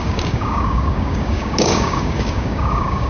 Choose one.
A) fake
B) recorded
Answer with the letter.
A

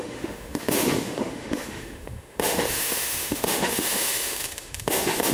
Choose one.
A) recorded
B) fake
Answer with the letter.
B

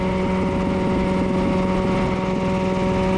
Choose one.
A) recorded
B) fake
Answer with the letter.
A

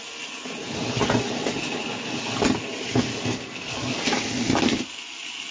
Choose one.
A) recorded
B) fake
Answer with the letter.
A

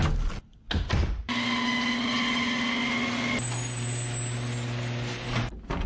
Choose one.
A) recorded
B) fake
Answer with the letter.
A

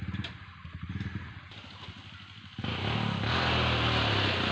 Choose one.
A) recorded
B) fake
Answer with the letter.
A